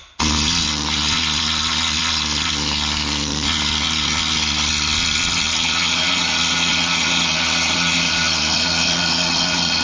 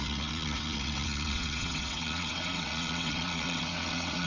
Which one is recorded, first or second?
first